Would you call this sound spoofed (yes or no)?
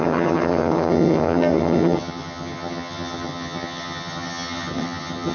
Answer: yes